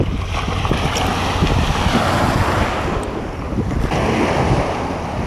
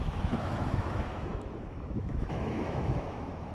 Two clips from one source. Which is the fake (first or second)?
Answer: second